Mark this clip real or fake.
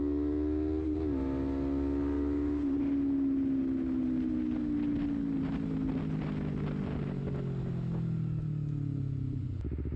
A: real